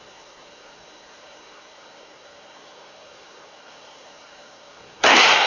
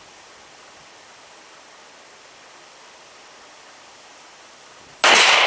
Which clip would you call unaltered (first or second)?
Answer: second